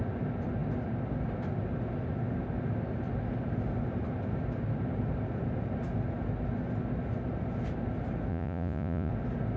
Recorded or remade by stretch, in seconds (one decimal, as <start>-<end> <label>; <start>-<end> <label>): 0.0-8.3 recorded; 8.3-9.1 remade; 9.1-9.6 recorded